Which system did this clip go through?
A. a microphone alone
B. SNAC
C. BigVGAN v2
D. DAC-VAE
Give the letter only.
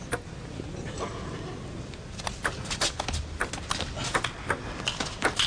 A